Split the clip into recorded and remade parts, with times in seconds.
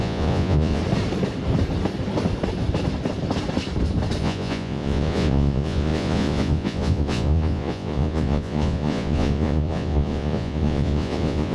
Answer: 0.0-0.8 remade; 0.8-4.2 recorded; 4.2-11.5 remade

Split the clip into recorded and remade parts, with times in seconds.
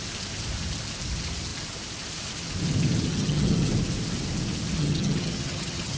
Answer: 0.0-3.1 recorded; 3.1-3.7 remade; 3.7-4.8 recorded; 4.8-6.0 remade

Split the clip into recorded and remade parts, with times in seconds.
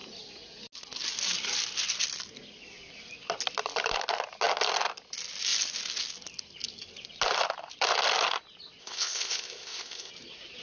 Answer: 0.0-8.8 recorded; 8.8-10.1 remade; 10.1-10.6 recorded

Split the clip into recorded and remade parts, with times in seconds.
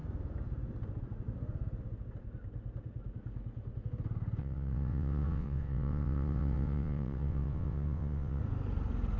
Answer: 0.0-4.4 recorded; 4.4-8.4 remade; 8.4-9.2 recorded